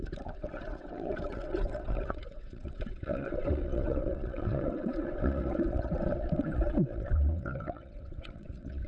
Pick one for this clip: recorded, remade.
remade